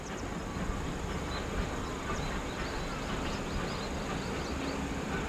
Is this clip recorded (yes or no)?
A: yes